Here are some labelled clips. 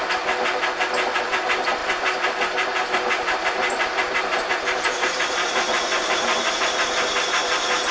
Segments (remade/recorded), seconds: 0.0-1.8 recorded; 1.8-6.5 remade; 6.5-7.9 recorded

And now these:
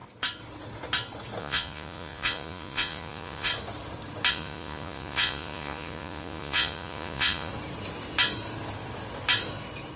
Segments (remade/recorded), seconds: 0.0-1.4 recorded; 1.4-3.5 remade; 3.5-4.3 recorded; 4.3-7.5 remade; 7.5-10.0 recorded

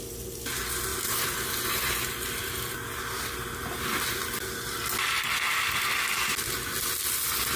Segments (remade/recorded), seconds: 0.0-7.6 recorded